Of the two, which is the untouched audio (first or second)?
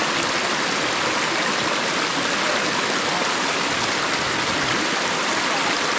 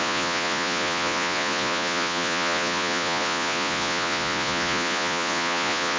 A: first